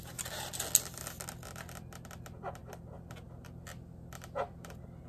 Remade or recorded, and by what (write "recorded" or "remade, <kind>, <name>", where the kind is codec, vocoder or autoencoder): recorded